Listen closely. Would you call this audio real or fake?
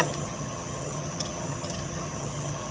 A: fake